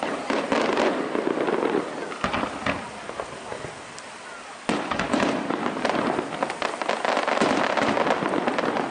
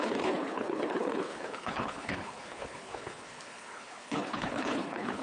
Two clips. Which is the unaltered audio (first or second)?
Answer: first